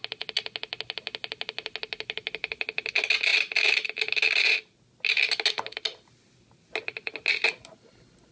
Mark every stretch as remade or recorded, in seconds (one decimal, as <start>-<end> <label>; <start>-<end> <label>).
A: 0.0-8.3 recorded